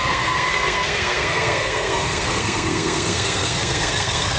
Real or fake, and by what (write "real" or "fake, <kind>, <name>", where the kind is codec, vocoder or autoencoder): fake, codec, SNAC